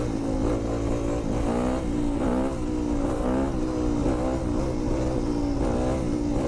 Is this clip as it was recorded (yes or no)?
yes